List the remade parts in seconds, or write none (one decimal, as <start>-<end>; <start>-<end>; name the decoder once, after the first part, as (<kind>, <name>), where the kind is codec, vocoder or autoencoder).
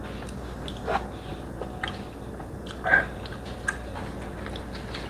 none